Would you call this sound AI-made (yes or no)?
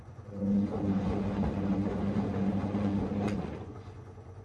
yes